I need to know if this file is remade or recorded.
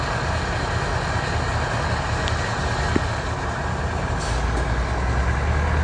recorded